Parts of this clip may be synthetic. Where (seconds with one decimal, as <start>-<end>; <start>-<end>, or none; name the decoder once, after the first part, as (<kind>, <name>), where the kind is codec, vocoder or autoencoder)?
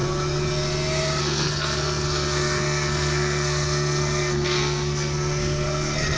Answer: 1.2-6.2 (codec, SNAC)